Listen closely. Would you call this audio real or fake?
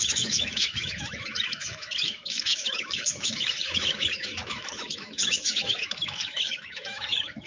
fake